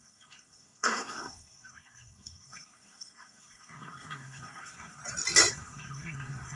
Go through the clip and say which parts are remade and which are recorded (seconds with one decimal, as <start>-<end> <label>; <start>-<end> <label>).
0.0-5.0 remade; 5.0-5.5 recorded; 5.5-6.6 remade